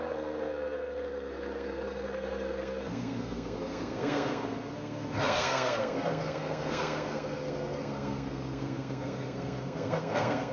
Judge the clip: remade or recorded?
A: remade